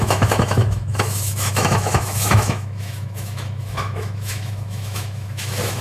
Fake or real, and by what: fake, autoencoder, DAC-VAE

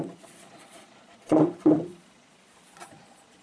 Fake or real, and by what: fake, vocoder, Vocos